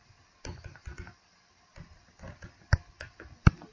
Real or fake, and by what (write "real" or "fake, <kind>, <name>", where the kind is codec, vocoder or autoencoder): real